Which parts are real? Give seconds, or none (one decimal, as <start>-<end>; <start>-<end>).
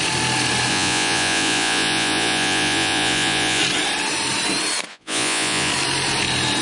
0.0-0.7; 3.6-4.9; 5.7-6.6